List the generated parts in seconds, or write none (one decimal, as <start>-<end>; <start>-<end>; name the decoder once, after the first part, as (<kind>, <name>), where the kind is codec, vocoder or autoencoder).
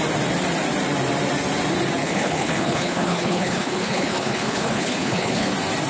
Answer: 2.0-5.5 (codec, HILCodec)